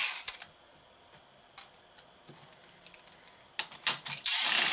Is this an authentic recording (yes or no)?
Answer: yes